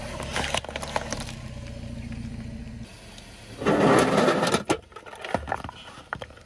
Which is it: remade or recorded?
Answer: recorded